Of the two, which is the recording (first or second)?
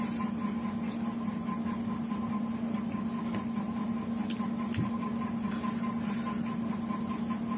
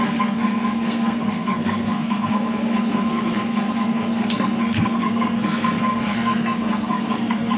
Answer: first